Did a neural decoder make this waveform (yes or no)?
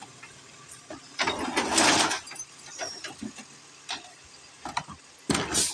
no